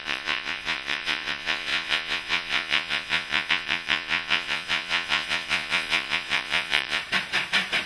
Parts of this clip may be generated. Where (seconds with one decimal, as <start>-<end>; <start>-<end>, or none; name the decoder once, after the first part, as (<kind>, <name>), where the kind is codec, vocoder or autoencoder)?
0.0-7.0 (vocoder, Vocos)